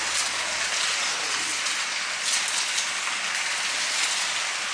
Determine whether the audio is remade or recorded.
recorded